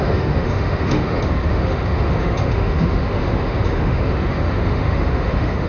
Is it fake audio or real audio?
fake